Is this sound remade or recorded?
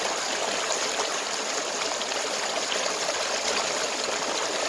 recorded